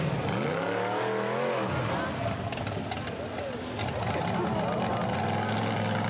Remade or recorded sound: recorded